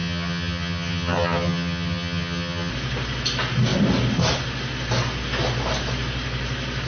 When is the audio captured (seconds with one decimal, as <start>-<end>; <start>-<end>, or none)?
2.7-6.9